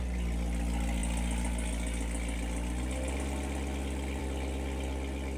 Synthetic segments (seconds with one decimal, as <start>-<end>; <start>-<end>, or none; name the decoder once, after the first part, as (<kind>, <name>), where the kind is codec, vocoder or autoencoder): none